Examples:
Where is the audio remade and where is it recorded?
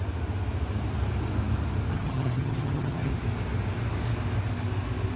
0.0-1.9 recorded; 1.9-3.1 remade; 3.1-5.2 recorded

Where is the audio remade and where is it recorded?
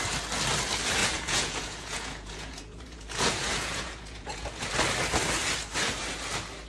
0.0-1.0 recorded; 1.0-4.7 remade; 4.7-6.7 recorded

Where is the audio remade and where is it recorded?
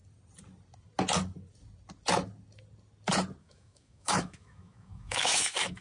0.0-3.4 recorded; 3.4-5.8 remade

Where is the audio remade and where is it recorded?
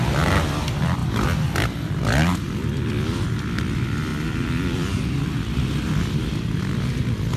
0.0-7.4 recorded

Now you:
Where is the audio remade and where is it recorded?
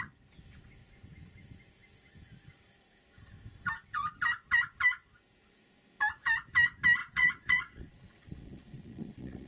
0.0-7.0 recorded; 7.0-9.5 remade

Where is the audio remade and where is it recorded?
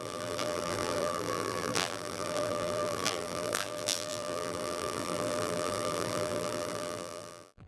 0.0-7.7 remade